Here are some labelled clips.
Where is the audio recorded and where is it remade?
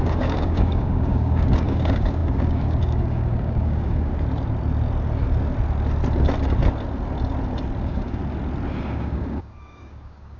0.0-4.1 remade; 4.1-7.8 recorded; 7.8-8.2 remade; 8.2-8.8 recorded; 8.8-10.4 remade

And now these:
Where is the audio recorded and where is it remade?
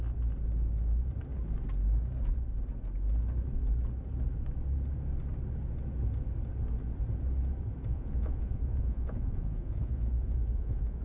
0.0-7.9 recorded; 7.9-11.0 remade